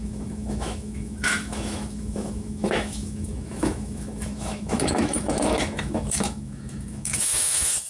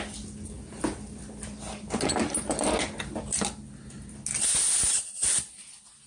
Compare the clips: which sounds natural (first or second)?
second